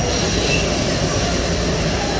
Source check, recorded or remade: recorded